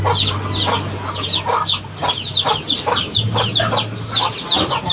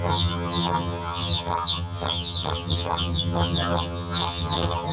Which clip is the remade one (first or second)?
second